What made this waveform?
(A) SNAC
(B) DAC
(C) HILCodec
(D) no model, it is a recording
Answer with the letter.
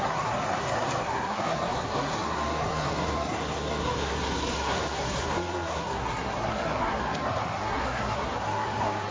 A